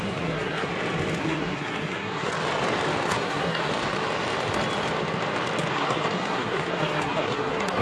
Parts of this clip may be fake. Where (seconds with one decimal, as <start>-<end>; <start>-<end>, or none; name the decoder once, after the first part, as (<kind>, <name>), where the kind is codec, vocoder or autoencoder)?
0.0-0.7 (codec, SNAC); 1.2-2.3; 3.1-3.7; 5.7-7.8

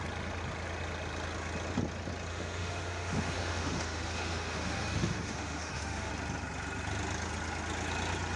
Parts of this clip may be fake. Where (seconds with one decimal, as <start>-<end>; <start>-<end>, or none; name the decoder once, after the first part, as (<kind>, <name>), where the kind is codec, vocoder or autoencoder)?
2.3-6.1 (autoencoder, DAC-VAE)

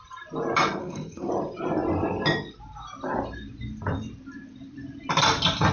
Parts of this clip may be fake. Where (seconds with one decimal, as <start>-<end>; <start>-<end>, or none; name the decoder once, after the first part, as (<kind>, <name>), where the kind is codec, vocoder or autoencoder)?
0.8-1.3 (codec, SNAC)

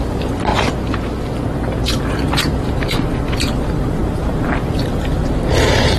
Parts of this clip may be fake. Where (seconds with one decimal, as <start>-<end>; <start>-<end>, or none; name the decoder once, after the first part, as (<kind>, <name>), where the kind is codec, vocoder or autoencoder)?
0.0-0.5 (vocoder, BigVGAN v2); 2.0-2.8; 3.5-6.0

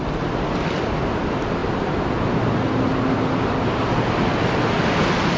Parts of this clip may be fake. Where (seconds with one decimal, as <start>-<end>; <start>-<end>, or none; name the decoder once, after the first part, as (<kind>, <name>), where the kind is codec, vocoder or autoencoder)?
none

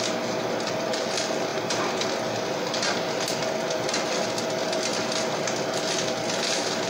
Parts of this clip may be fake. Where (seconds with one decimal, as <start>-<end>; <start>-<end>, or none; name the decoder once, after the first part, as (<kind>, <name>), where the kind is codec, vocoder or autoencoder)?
none

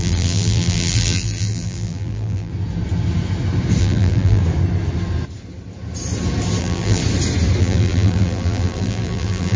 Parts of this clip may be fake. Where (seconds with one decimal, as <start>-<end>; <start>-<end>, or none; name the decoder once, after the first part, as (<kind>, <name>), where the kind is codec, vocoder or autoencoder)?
0.0-2.5 (vocoder, BigVGAN v2); 3.8-4.4; 6.6-7.0; 7.6-9.6

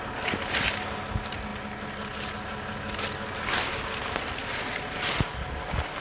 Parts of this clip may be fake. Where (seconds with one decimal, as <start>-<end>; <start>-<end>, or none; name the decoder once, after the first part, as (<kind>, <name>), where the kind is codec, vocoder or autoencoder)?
none